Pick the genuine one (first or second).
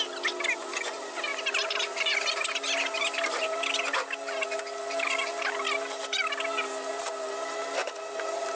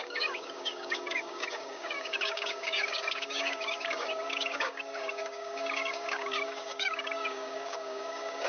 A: first